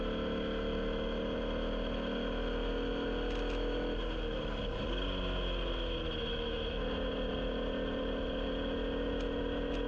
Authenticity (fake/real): real